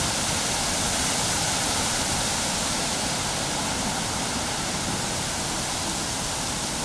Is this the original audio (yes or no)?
yes